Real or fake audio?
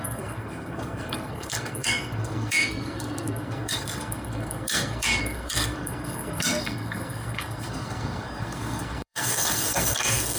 fake